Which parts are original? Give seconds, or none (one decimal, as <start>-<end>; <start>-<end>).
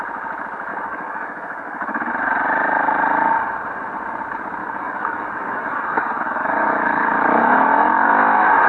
0.0-0.7; 2.1-4.6; 8.1-8.7